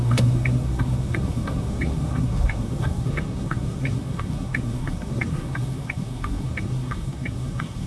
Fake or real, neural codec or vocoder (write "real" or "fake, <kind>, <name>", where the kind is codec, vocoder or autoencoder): fake, codec, SNAC